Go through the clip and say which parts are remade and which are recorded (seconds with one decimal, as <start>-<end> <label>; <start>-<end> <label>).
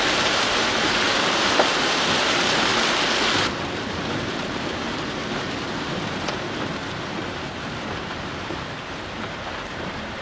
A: 0.0-2.7 remade; 2.7-3.9 recorded; 3.9-10.2 remade